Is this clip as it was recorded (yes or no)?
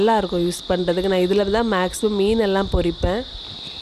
yes